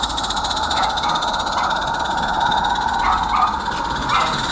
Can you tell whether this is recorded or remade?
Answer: recorded